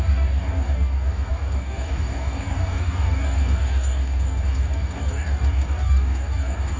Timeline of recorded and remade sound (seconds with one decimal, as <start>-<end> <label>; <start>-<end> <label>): 0.0-6.8 remade